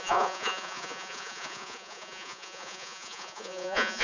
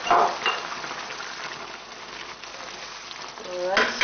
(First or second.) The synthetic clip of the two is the first